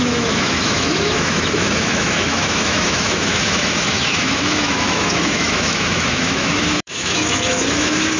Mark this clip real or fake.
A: fake